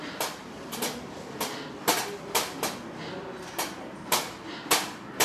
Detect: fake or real real